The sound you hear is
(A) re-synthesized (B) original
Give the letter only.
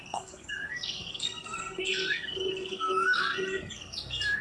A